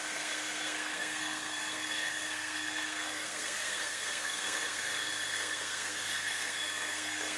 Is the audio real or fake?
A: fake